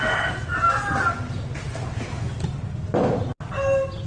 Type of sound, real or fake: real